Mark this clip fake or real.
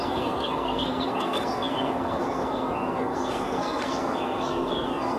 fake